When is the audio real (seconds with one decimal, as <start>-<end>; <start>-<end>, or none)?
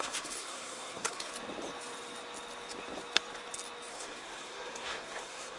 1.3-3.9